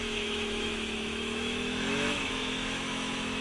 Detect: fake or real fake